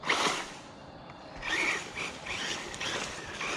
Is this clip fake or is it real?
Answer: real